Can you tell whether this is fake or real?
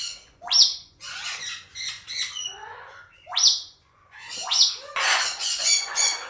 fake